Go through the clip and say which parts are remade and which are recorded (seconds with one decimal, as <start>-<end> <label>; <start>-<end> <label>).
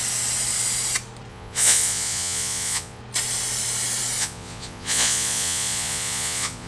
0.0-1.3 recorded; 1.3-3.0 remade; 3.0-4.2 recorded; 4.2-6.7 remade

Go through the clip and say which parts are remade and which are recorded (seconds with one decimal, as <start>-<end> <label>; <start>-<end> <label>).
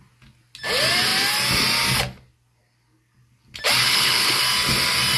0.0-3.8 recorded; 3.8-4.4 remade; 4.4-5.2 recorded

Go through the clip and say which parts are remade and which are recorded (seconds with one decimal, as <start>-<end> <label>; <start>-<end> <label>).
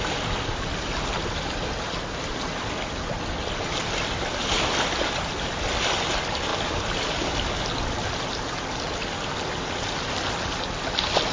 0.0-11.3 recorded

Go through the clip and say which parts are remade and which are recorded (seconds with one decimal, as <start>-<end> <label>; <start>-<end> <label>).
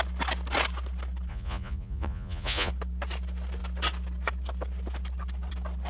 0.0-1.3 recorded; 1.3-2.7 remade; 2.7-5.9 recorded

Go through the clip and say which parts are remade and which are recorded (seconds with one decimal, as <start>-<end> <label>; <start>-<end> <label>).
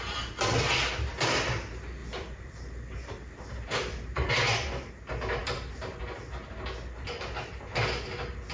0.0-2.0 recorded; 2.0-4.3 remade; 4.3-8.5 recorded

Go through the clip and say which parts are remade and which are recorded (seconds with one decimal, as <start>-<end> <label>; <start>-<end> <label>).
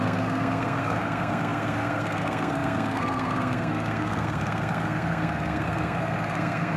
0.0-6.8 remade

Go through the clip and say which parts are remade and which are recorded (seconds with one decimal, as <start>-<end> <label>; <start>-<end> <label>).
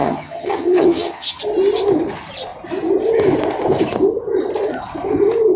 0.0-1.4 remade; 1.4-5.6 recorded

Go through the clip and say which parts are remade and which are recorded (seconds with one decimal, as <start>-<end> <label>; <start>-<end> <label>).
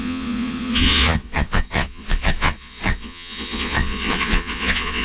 0.0-5.0 remade